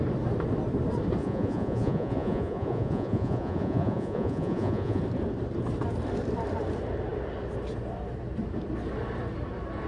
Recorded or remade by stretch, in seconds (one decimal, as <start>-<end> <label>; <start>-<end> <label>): 0.0-1.2 recorded; 1.2-5.0 remade; 5.0-9.9 recorded